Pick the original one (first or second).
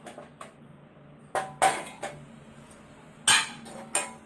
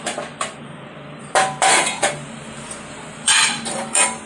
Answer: first